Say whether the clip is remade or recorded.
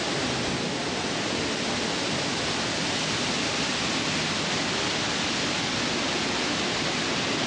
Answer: recorded